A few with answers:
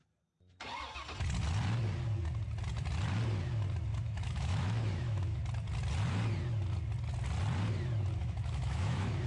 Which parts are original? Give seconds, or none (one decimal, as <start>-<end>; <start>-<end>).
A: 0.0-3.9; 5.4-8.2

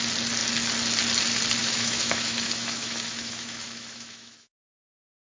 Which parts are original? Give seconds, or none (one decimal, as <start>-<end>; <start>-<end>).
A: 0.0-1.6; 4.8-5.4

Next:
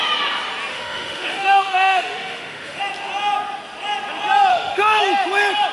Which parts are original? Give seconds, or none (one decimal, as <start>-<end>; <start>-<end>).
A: 0.0-0.7; 2.8-4.5; 5.0-5.7

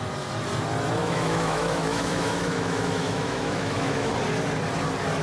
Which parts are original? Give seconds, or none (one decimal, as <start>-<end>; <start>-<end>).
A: 0.0-1.0; 4.1-5.2

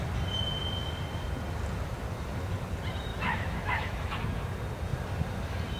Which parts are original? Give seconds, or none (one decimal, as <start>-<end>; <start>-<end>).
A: 0.0-3.1; 4.2-5.8

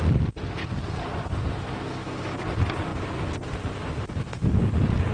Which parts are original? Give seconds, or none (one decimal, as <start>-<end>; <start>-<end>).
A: 0.0-1.5; 2.4-5.1